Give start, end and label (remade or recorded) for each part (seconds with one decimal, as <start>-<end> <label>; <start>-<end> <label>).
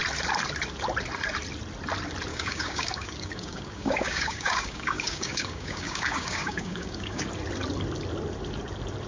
0.0-2.3 recorded; 2.3-7.2 remade; 7.2-9.1 recorded